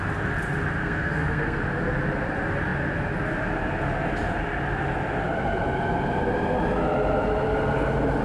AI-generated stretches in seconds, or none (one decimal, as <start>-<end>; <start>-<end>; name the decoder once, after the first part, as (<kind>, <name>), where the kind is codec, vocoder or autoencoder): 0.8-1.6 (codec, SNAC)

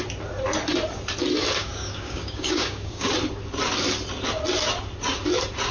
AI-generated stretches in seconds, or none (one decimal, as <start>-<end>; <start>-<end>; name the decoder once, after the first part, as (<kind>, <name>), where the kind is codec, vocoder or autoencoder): 1.6-3.1 (codec, DAC)

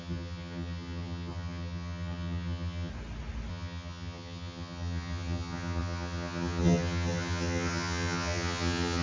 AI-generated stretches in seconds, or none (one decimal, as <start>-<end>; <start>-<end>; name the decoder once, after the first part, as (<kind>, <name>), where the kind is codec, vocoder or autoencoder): 0.0-2.9 (vocoder, HiFi-GAN); 3.5-9.0

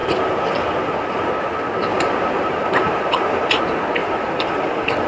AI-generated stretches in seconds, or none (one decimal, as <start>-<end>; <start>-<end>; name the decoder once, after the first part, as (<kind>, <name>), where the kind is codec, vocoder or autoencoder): 0.0-1.3 (vocoder, BigVGAN v2); 1.9-3.5; 4.0-5.1